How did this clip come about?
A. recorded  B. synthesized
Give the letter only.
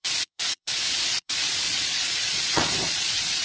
B